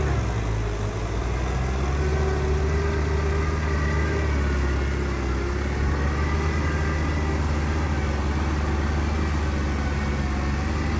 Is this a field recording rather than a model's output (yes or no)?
yes